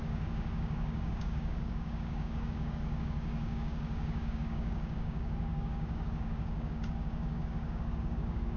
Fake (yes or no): yes